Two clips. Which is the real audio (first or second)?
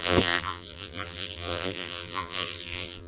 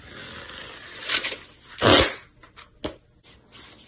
second